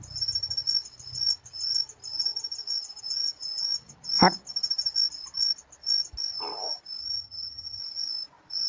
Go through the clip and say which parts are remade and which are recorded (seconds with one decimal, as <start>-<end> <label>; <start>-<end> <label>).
0.0-7.0 recorded; 7.0-7.8 remade; 7.8-8.7 recorded

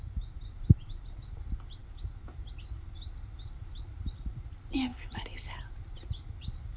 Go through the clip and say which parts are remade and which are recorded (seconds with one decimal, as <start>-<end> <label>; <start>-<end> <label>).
0.0-4.9 recorded; 4.9-5.6 remade; 5.6-6.8 recorded

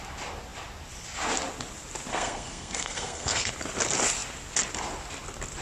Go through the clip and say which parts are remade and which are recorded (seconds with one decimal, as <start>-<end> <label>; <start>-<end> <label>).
0.0-2.1 recorded; 2.1-3.5 remade; 3.5-5.6 recorded

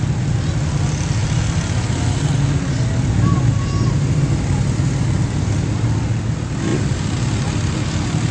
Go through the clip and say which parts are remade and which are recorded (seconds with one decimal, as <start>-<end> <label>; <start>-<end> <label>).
0.0-8.3 recorded

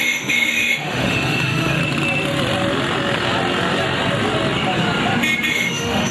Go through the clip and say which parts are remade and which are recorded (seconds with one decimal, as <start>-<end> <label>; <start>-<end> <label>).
0.0-1.8 remade; 1.8-5.5 recorded; 5.5-6.1 remade

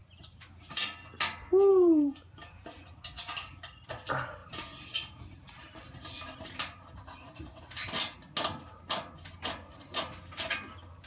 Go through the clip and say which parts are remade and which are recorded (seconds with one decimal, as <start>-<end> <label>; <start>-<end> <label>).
0.0-0.8 remade; 0.8-1.7 recorded; 1.7-2.6 remade; 2.6-4.4 recorded; 4.4-7.6 remade; 7.6-11.1 recorded